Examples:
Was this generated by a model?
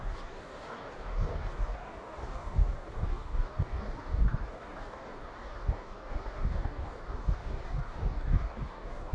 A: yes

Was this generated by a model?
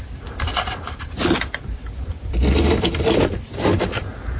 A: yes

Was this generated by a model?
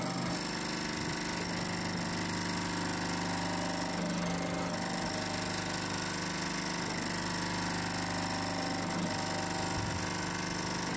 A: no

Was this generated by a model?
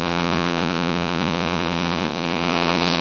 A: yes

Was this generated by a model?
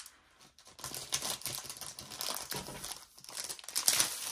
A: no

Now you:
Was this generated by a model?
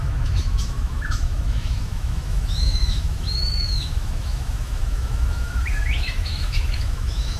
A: yes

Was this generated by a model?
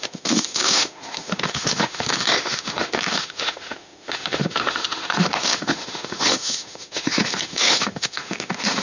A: yes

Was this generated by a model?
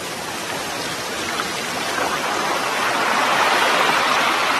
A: no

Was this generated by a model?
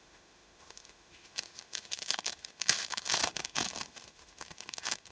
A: yes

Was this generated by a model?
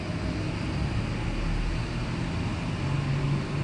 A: no